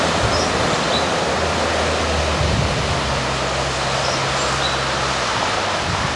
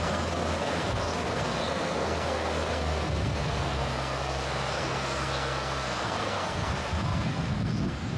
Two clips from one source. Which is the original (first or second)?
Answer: first